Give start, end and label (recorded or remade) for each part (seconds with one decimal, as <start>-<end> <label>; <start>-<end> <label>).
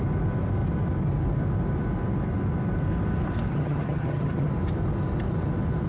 0.0-3.5 recorded; 3.5-4.5 remade; 4.5-5.9 recorded